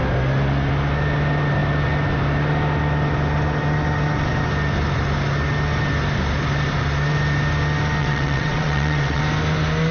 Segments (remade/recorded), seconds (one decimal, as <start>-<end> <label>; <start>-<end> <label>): 0.0-8.0 recorded; 8.0-9.2 remade; 9.2-9.9 recorded